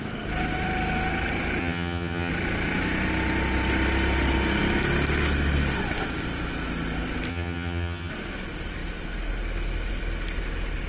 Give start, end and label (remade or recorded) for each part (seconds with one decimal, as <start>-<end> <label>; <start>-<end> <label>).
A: 0.0-1.6 recorded; 1.6-2.3 remade; 2.3-7.3 recorded; 7.3-8.1 remade; 8.1-10.9 recorded